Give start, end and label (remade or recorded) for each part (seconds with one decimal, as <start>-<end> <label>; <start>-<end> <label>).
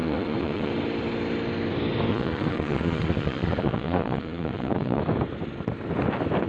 0.0-0.7 remade; 0.7-2.1 recorded; 2.1-5.0 remade; 5.0-6.5 recorded